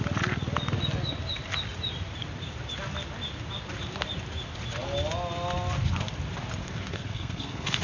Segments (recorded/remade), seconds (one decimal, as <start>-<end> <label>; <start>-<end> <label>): 0.0-6.6 recorded; 6.6-7.8 remade